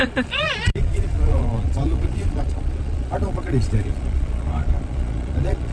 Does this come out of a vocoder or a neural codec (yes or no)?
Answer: yes